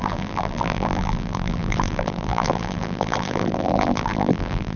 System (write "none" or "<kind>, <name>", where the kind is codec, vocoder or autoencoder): vocoder, BigVGAN v2